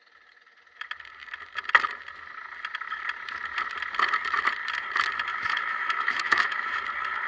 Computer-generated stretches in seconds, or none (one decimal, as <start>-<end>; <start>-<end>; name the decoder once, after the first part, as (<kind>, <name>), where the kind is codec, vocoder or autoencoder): 5.3-6.8 (autoencoder, DAC-VAE)